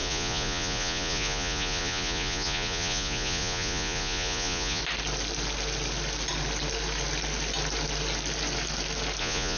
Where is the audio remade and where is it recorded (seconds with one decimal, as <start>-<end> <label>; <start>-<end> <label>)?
0.0-4.8 remade; 4.8-9.2 recorded; 9.2-9.6 remade